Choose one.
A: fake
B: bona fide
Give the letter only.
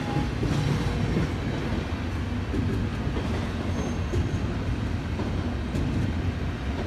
B